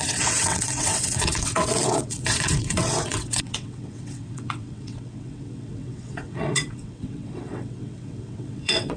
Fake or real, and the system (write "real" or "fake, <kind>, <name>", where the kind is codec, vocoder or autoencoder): fake, vocoder, WaveNeXt